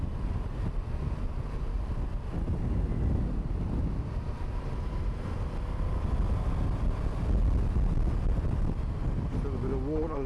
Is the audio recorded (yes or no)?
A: yes